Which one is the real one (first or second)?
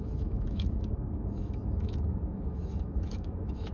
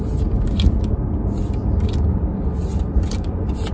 second